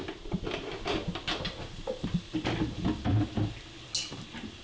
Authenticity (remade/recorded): recorded